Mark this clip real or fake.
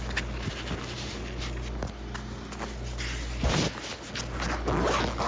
real